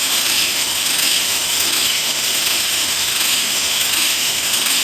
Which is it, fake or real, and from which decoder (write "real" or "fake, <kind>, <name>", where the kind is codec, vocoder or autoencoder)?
fake, autoencoder, DAC-VAE